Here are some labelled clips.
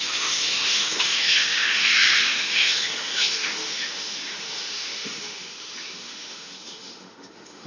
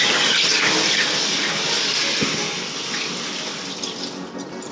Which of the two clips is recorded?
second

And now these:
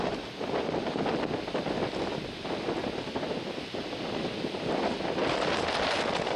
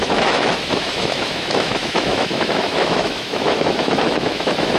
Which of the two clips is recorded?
first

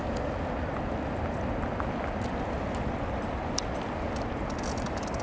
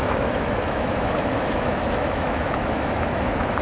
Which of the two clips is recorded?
first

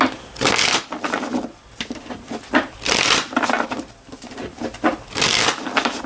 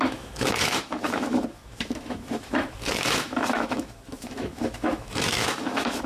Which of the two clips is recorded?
first